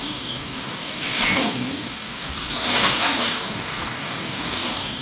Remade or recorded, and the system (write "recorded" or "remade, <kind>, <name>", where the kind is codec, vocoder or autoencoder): remade, codec, DAC